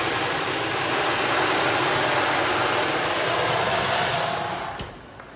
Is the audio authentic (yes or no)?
yes